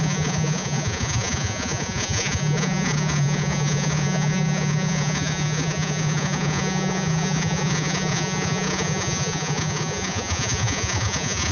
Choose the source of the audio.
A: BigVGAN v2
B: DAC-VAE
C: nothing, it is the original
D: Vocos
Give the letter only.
D